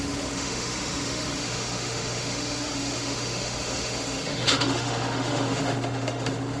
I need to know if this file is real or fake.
fake